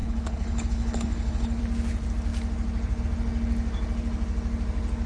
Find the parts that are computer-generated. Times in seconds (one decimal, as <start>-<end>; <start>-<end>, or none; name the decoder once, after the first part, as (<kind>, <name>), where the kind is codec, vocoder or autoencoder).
0.0-1.6 (codec, HILCodec)